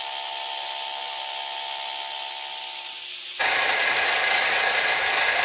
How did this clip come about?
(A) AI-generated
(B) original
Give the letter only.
B